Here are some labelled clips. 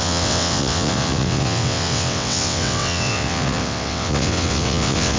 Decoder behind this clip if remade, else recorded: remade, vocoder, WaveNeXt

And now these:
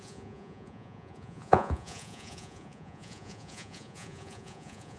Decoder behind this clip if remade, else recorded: remade, vocoder, Vocos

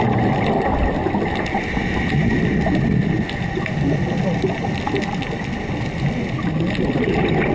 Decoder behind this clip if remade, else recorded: recorded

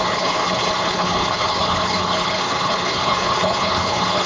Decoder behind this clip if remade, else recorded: remade, codec, HILCodec